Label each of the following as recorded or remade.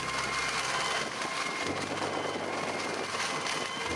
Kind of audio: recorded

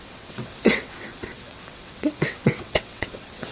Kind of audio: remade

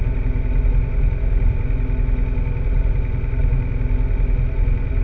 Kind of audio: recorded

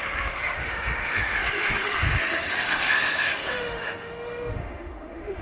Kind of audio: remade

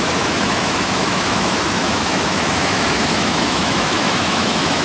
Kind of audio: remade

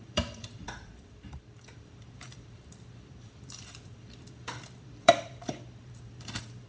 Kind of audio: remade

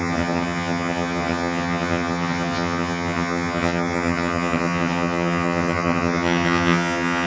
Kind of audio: remade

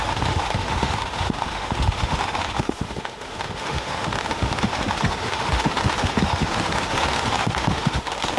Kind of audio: remade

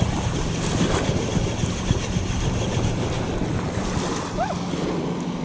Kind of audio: recorded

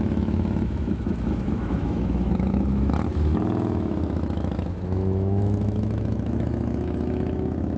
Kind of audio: remade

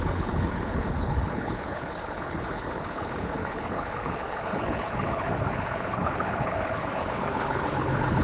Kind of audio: remade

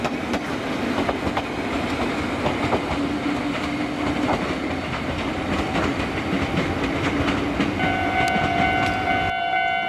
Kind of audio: recorded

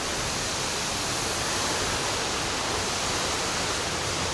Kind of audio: recorded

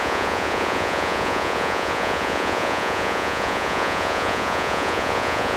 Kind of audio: remade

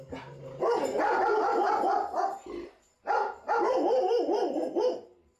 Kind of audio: recorded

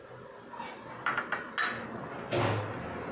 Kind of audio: recorded